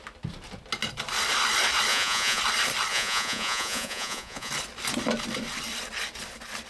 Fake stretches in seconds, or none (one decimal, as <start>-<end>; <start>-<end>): 1.9-2.4; 2.9-4.5